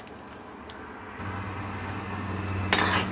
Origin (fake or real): real